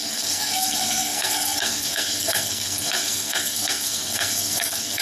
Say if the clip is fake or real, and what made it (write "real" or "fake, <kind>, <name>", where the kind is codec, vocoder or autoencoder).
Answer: fake, codec, SNAC